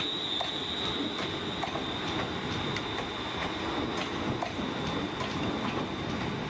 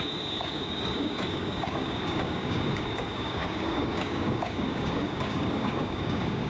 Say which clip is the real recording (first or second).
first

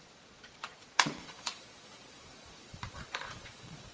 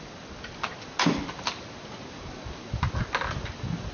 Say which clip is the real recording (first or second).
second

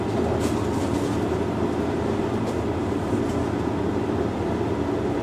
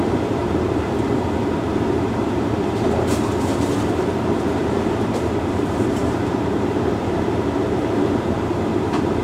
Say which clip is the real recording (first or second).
first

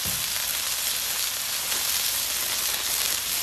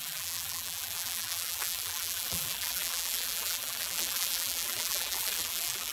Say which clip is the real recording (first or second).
first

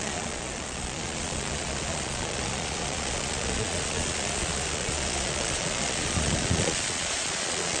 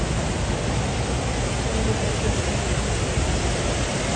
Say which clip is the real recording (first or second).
second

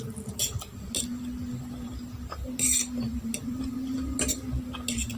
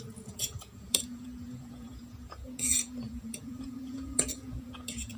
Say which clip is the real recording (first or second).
first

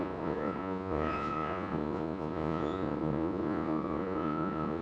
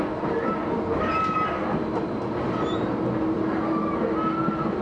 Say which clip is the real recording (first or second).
second